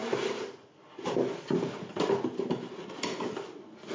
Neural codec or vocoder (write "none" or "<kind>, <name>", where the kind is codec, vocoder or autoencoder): none